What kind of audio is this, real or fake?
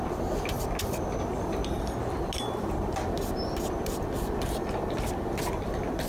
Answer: real